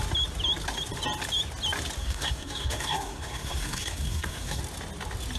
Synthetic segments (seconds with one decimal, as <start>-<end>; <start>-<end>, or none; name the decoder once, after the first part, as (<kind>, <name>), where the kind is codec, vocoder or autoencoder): 2.0-4.6 (codec, SNAC)